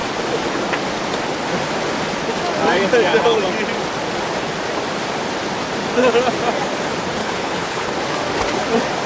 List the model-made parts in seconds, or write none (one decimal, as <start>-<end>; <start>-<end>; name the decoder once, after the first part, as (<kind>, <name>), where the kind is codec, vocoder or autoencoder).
7.2-7.9 (codec, HILCodec)